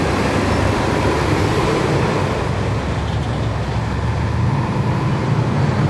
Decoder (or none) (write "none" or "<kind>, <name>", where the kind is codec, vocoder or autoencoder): none